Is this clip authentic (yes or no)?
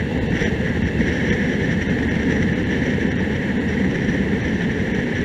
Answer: no